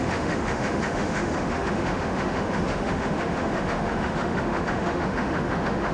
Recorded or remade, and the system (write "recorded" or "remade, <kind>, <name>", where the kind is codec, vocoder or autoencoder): remade, autoencoder, DAC-VAE